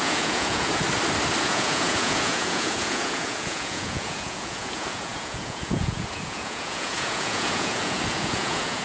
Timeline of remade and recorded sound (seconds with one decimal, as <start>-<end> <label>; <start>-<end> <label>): 0.0-0.8 remade; 0.8-1.4 recorded; 1.4-8.8 remade